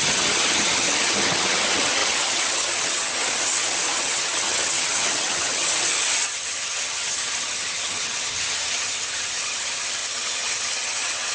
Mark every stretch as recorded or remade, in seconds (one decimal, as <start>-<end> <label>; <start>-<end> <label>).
0.0-11.3 remade